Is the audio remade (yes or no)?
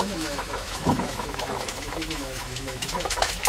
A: yes